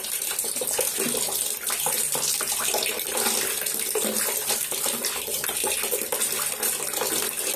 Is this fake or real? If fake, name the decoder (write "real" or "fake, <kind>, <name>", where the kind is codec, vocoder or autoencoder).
real